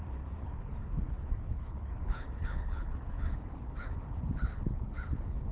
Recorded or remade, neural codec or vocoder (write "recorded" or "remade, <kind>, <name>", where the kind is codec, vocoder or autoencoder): remade, codec, HILCodec